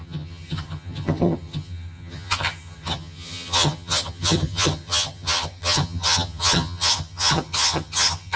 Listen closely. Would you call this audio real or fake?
fake